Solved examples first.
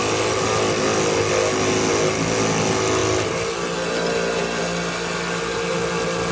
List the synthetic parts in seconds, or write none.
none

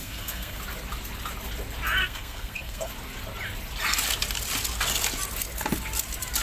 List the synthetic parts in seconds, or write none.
0.0-0.6 (codec, SNAC); 2.0-2.9